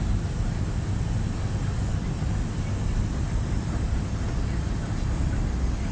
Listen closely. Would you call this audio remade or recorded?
recorded